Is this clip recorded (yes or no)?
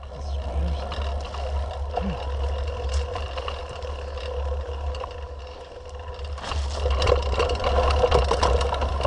yes